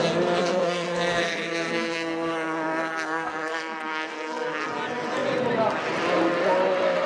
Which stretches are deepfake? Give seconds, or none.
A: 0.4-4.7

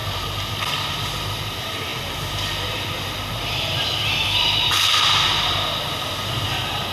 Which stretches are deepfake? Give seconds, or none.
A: none

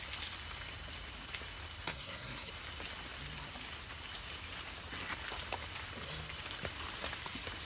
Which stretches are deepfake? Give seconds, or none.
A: 1.9-2.5